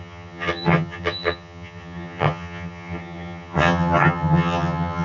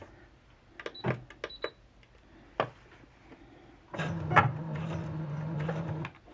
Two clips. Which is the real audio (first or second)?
second